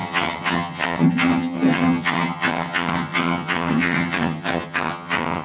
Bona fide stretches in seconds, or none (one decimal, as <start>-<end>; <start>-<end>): none